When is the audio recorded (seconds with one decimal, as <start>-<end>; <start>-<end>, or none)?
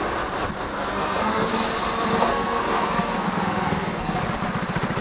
0.0-0.7; 1.5-2.3; 4.2-5.0